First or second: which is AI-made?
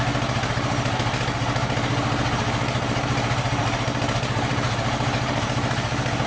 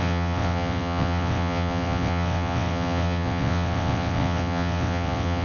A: second